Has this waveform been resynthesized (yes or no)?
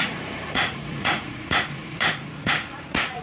yes